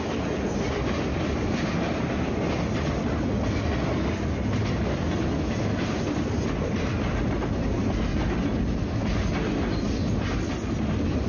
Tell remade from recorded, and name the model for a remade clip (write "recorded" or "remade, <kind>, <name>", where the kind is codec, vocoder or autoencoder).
recorded